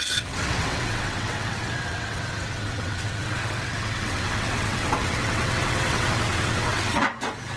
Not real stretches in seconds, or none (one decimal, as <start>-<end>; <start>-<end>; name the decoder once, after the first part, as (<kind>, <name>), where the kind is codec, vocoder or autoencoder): 0.0-7.6 (vocoder, WaveNeXt)